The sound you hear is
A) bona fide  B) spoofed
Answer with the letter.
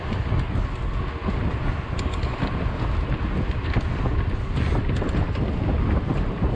A